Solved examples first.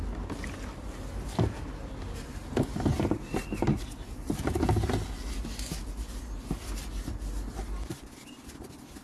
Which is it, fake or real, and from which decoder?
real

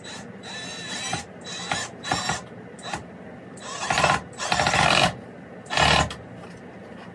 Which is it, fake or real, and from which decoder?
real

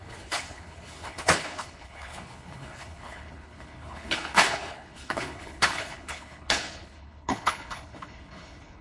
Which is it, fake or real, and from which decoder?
fake, codec, HILCodec